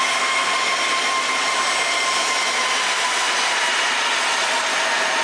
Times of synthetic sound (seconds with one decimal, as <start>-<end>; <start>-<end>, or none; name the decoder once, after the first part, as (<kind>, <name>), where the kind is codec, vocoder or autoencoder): none